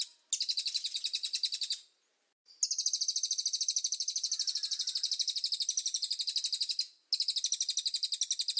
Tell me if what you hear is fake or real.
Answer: real